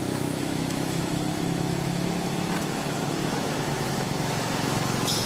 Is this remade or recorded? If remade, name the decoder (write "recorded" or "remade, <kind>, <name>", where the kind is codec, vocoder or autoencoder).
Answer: remade, autoencoder, DAC-VAE